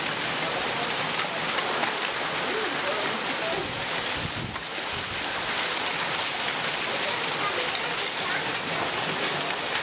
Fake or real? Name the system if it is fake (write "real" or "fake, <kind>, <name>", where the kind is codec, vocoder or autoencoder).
real